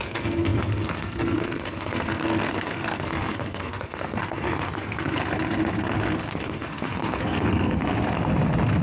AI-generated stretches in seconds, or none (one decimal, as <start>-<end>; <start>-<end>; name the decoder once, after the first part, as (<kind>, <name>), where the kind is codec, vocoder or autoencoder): 0.0-5.2 (codec, SNAC); 6.3-7.8